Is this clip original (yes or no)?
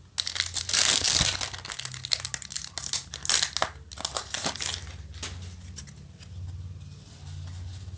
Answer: yes